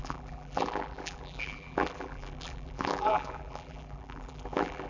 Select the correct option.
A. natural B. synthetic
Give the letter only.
B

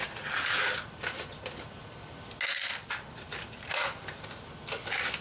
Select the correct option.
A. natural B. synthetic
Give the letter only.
A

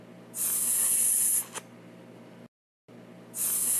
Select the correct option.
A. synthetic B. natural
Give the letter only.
B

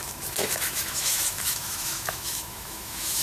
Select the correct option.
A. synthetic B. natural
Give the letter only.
A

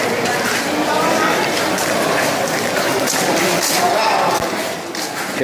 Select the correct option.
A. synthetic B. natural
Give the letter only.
B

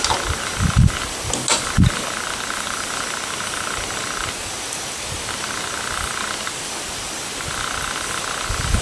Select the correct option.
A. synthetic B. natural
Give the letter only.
B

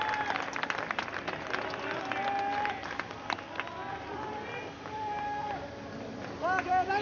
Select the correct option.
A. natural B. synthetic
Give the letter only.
A